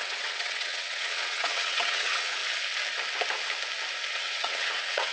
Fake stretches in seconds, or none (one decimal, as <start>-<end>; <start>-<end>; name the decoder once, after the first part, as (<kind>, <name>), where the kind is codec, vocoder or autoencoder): 0.0-2.4 (vocoder, WaveNeXt); 4.1-5.1